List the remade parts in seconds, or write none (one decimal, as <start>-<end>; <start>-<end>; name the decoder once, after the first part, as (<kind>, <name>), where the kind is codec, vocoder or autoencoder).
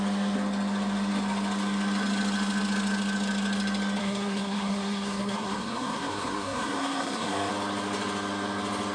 4.0-7.5 (codec, SNAC)